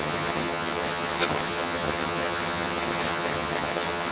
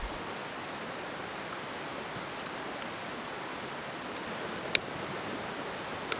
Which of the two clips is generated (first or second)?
first